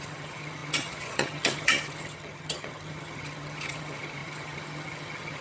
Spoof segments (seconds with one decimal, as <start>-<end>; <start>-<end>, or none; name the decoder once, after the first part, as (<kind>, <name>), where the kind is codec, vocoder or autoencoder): 0.0-5.4 (vocoder, HiFi-GAN)